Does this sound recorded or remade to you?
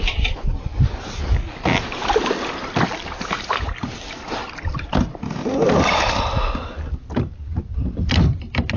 recorded